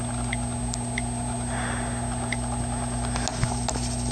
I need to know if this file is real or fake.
real